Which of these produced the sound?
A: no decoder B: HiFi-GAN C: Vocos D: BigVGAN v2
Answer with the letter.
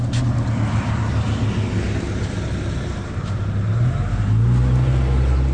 A